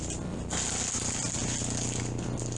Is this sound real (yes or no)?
yes